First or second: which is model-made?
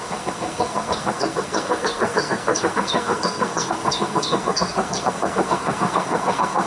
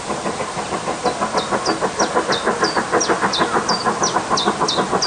first